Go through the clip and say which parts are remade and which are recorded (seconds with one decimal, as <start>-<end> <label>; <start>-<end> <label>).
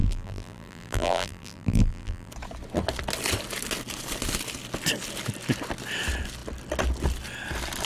0.0-2.3 remade; 2.3-7.9 recorded